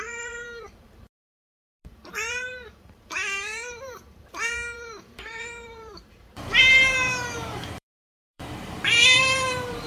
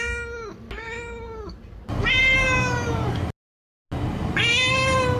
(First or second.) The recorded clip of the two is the second